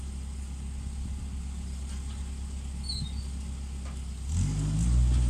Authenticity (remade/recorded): recorded